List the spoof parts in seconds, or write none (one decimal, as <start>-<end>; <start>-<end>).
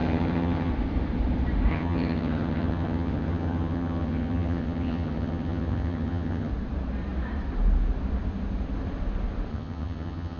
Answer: 0.0-0.7; 1.7-6.5; 9.5-10.4